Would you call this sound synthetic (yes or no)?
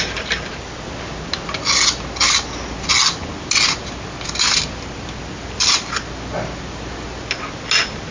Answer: no